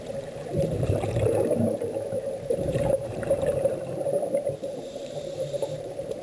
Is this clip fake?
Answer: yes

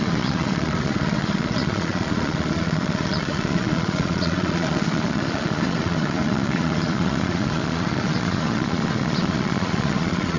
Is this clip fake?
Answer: yes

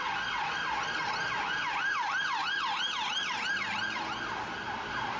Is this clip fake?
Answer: no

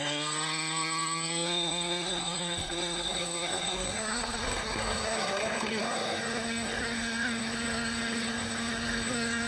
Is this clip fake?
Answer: yes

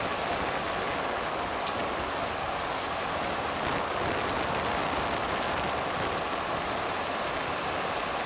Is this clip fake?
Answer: no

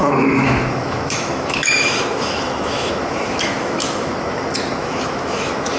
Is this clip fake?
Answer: yes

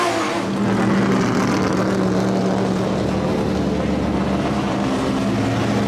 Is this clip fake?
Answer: no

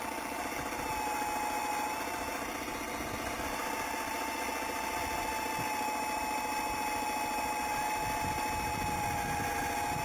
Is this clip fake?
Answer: no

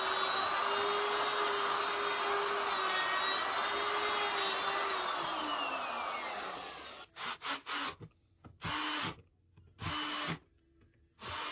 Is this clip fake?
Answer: no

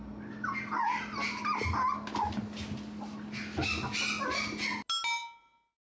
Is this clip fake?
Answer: no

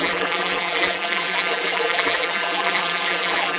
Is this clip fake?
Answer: yes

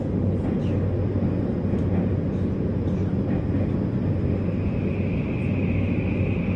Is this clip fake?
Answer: no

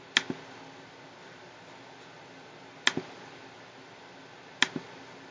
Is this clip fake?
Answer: no